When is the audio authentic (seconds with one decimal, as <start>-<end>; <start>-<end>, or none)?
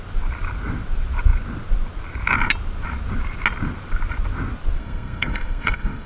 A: 0.0-4.8